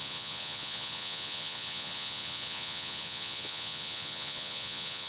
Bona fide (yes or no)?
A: no